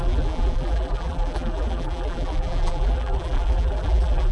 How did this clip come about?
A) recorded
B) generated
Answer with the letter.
B